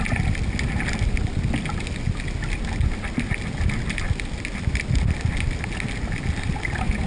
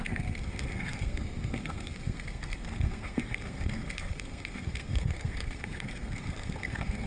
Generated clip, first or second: second